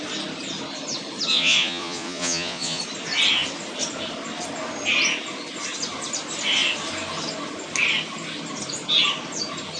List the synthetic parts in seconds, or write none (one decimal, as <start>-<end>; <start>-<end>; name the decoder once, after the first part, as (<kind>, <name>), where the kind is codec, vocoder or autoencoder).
1.3-2.8 (vocoder, Vocos)